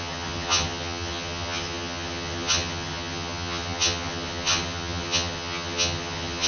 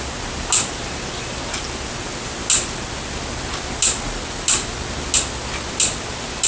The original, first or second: second